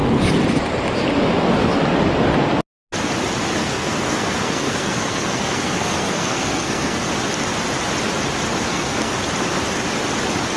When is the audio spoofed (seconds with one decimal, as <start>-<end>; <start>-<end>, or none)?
3.6-7.1; 8.7-9.2